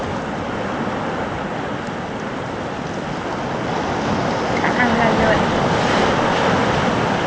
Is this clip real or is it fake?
real